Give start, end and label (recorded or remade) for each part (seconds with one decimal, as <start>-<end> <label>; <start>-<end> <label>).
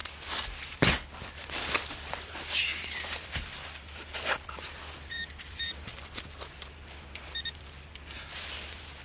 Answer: 0.0-1.7 recorded; 1.7-9.0 remade